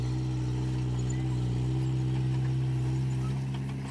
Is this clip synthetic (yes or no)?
no